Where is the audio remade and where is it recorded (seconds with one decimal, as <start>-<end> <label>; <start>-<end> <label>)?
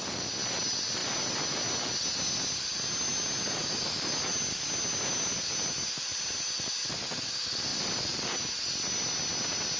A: 0.0-9.8 recorded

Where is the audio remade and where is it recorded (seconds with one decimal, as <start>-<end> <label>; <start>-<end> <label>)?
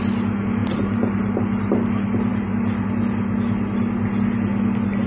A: 0.0-0.6 recorded; 0.6-1.4 remade; 1.4-2.3 recorded; 2.3-2.9 remade; 2.9-5.1 recorded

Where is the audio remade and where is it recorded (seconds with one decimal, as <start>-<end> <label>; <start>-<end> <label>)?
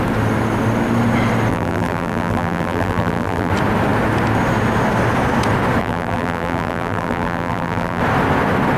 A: 0.0-1.5 recorded; 1.5-3.5 remade; 3.5-5.8 recorded; 5.8-8.0 remade; 8.0-8.8 recorded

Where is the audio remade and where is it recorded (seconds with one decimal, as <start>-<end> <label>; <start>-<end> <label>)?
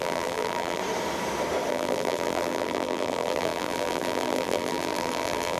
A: 0.0-0.8 remade; 0.8-1.7 recorded; 1.7-5.6 remade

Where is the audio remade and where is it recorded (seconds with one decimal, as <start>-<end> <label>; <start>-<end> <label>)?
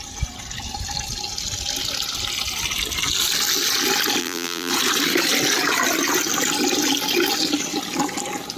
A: 0.0-4.2 recorded; 4.2-4.7 remade; 4.7-8.6 recorded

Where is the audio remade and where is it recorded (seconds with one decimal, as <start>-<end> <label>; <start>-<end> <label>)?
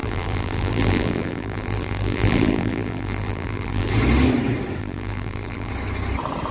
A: 0.0-3.9 remade; 3.9-4.8 recorded; 4.8-5.7 remade; 5.7-6.5 recorded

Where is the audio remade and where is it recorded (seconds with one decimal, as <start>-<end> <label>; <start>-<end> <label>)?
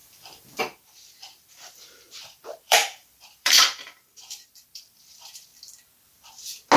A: 0.0-0.6 recorded; 0.6-5.5 remade; 5.5-6.8 recorded